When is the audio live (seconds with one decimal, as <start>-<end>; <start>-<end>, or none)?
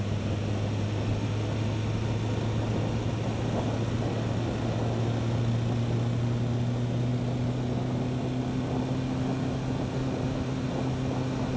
0.0-11.6